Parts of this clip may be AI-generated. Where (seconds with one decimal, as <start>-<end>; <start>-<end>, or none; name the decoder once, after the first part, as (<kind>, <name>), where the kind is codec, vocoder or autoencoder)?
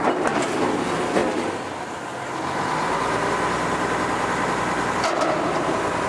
none